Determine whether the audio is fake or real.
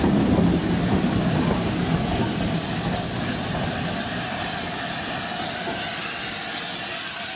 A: real